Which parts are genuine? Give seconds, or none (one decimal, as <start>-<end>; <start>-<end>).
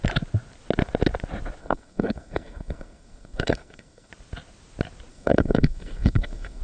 0.0-1.6; 4.1-5.1